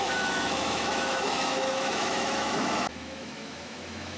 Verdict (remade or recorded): remade